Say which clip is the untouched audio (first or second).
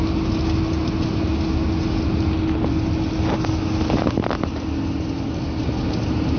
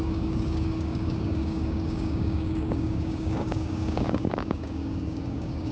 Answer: first